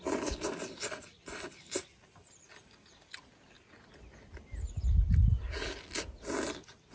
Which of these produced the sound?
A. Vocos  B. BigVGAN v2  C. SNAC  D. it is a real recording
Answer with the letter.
D